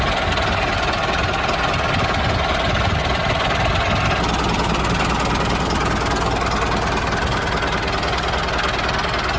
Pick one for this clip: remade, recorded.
recorded